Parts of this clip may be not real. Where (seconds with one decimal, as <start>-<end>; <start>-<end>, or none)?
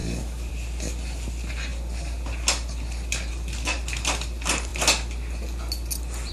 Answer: 0.0-0.5